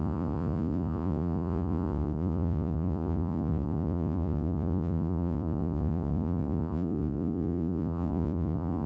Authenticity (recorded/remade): remade